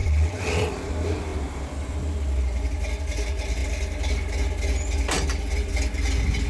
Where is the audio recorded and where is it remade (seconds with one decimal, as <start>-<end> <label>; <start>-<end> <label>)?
0.0-0.7 remade; 0.7-6.5 recorded